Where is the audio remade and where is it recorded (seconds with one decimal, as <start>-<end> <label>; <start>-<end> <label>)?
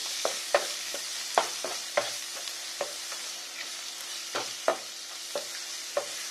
0.0-1.0 remade; 1.0-6.3 recorded